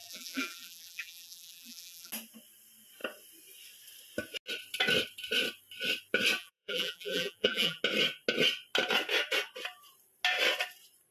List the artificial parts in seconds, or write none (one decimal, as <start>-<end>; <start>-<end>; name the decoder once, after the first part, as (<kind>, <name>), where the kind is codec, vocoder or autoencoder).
0.0-2.1 (vocoder, BigVGAN v2); 6.4-7.8